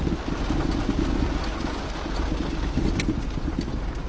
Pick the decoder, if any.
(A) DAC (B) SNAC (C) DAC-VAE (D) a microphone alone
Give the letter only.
D